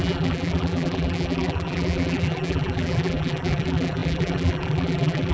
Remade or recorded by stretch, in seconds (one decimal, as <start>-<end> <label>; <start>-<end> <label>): 0.0-5.3 remade